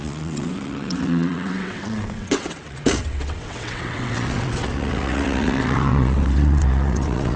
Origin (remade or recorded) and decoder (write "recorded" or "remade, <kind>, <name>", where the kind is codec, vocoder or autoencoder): remade, vocoder, WaveNeXt